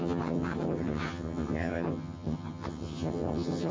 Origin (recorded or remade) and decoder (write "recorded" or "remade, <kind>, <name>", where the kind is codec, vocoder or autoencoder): remade, vocoder, HiFi-GAN